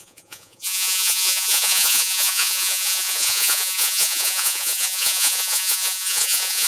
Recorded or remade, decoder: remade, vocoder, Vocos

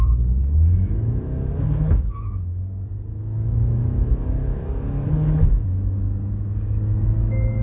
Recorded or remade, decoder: remade, autoencoder, DAC-VAE